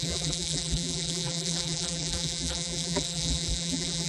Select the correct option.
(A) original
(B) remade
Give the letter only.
B